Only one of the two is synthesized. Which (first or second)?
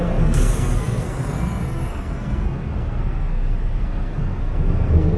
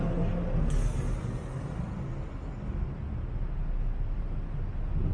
first